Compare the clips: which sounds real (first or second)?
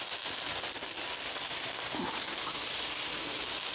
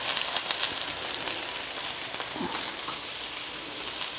first